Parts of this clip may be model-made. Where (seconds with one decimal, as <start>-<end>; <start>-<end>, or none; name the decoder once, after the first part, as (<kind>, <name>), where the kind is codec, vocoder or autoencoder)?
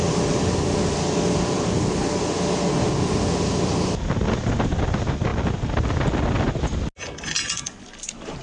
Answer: none